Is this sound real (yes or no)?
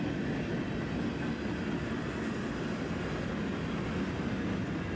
yes